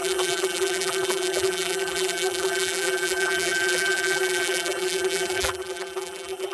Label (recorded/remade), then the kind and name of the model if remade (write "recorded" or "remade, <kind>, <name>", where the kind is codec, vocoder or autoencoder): remade, vocoder, BigVGAN v2